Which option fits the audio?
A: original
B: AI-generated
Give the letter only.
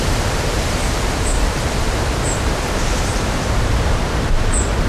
B